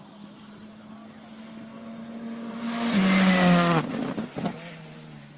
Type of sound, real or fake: real